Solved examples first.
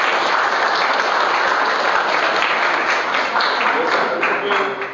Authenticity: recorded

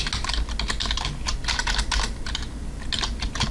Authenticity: recorded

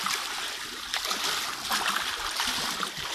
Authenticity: recorded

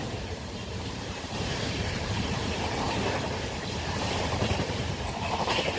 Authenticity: remade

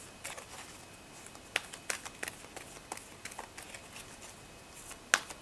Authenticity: recorded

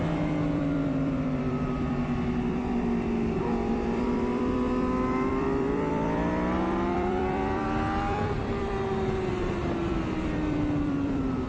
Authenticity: remade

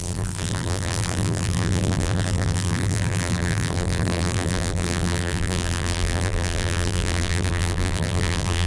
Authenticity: remade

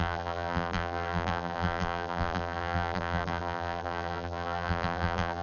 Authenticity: remade